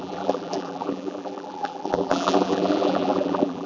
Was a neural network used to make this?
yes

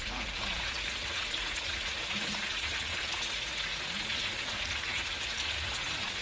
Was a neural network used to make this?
yes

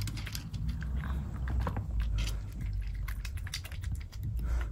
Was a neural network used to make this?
no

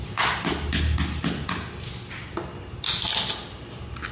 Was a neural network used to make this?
no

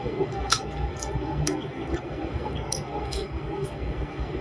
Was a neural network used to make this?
yes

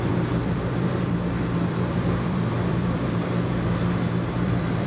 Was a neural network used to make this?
yes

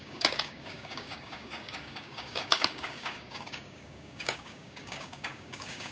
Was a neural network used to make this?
yes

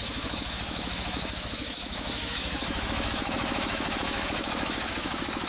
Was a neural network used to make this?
yes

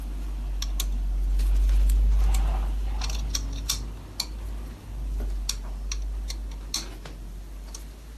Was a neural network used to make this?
no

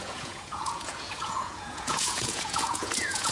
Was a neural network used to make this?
yes